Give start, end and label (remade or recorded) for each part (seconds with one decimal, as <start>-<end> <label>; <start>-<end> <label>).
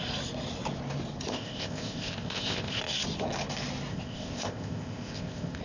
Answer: 0.0-1.3 recorded; 1.3-2.8 remade; 2.8-3.9 recorded; 3.9-5.6 remade